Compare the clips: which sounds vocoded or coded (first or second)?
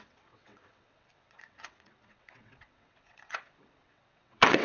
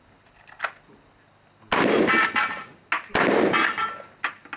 first